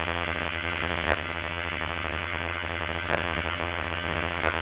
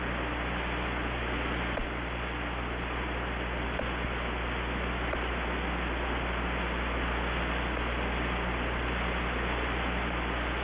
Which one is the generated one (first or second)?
first